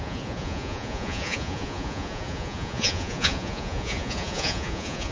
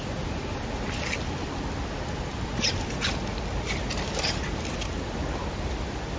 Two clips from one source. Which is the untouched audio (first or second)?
second